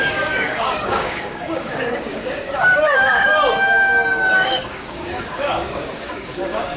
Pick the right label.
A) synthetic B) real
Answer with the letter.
A